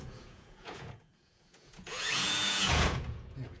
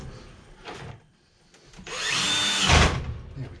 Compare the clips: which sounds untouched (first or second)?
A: second